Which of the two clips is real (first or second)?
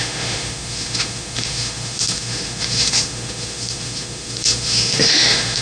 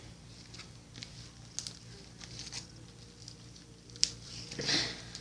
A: second